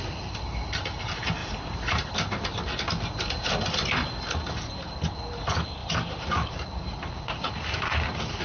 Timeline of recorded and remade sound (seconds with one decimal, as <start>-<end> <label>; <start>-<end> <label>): 0.0-1.4 recorded; 1.4-2.1 remade; 2.1-5.8 recorded; 5.8-6.9 remade; 6.9-8.4 recorded